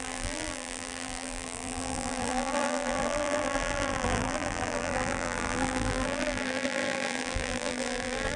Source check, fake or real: fake